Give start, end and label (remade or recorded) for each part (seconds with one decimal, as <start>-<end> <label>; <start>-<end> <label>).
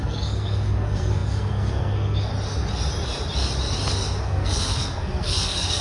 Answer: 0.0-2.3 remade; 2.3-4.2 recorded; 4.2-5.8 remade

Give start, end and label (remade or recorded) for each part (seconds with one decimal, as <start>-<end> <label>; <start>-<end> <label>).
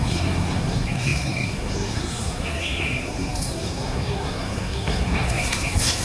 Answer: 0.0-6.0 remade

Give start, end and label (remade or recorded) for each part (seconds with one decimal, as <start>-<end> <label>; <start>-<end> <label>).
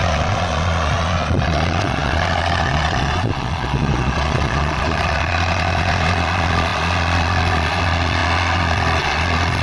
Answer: 0.0-9.6 remade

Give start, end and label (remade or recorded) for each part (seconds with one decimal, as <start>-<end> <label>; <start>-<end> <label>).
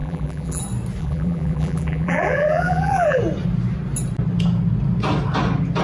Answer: 0.0-0.6 remade; 0.6-1.0 recorded; 1.0-3.2 remade; 3.2-5.8 recorded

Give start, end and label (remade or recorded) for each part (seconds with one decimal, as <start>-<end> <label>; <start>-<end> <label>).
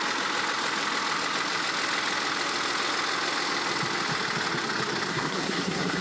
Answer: 0.0-5.1 recorded; 5.1-6.0 remade